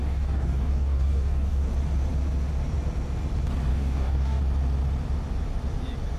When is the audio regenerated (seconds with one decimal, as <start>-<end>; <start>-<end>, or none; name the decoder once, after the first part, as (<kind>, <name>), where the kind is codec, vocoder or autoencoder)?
0.0-1.7 (codec, DAC); 3.7-4.4